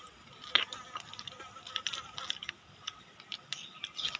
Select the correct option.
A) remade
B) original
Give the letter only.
B